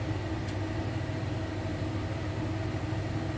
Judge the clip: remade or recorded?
recorded